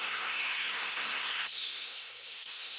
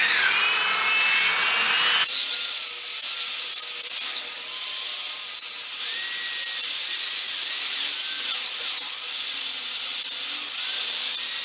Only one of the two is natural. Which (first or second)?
second